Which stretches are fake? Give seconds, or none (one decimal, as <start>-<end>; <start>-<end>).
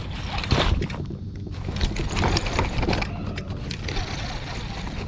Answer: none